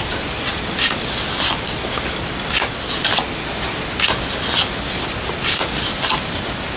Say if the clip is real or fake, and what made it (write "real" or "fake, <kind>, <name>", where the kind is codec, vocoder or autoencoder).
real